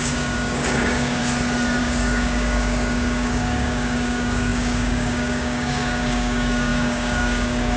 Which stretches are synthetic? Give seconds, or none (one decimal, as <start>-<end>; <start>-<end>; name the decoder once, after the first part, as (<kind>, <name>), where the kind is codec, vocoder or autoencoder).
0.0-1.2 (codec, DAC); 1.8-7.8